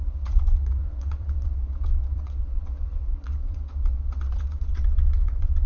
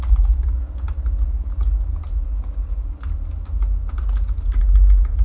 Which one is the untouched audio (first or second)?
second